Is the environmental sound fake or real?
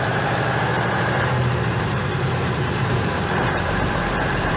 fake